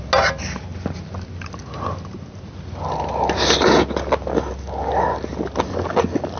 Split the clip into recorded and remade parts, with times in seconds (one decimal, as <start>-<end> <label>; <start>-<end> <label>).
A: 0.0-6.4 recorded